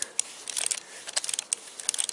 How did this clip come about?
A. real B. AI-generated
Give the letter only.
A